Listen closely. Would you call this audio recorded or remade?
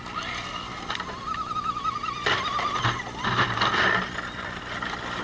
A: recorded